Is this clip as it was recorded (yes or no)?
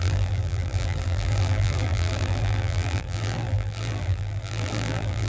no